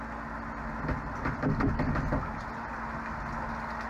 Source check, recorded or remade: recorded